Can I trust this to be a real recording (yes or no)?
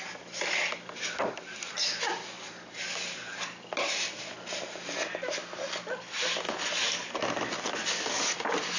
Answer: yes